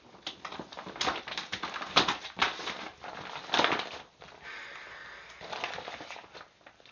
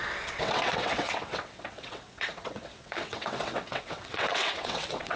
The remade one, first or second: second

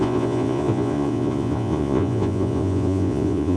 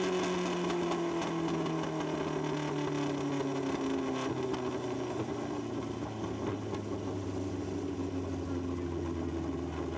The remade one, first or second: first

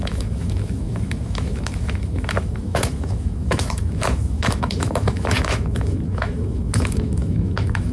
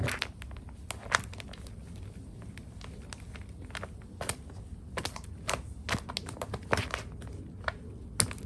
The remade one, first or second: first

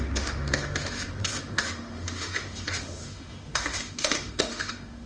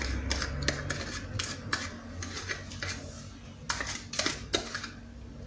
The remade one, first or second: first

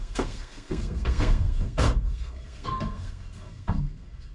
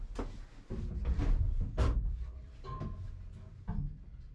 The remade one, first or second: first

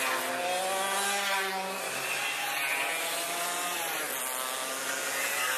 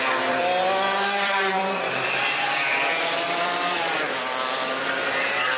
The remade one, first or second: second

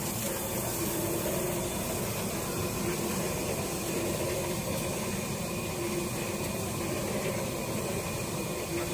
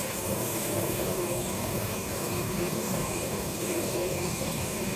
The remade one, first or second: second